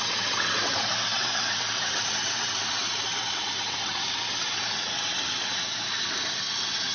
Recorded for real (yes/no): no